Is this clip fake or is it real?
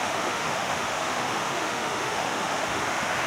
fake